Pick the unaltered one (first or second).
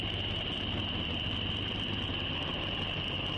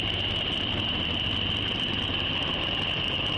first